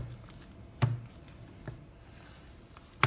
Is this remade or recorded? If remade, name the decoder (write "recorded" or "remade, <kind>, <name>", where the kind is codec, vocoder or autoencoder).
recorded